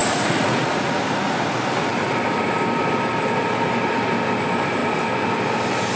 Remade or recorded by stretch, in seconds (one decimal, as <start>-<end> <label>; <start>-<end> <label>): 0.0-1.0 remade; 1.0-6.0 recorded